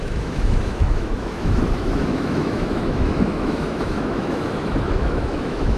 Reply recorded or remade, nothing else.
remade